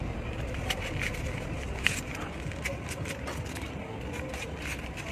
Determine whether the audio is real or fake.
real